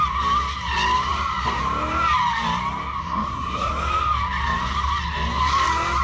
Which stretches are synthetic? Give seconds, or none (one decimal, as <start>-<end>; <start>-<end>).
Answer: 3.0-3.7